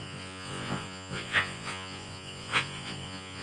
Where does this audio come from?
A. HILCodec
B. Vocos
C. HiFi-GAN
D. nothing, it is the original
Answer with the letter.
B